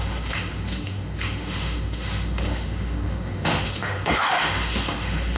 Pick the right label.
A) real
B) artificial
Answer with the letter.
B